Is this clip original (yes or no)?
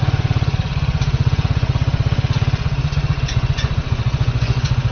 no